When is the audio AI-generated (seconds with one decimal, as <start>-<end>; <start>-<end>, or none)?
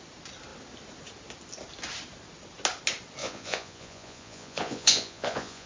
3.2-5.7